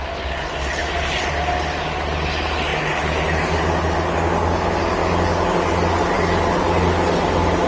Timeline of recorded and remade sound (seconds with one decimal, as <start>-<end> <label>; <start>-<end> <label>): 0.0-0.8 recorded; 0.8-1.3 remade; 1.3-2.7 recorded; 2.7-3.2 remade; 3.2-7.7 recorded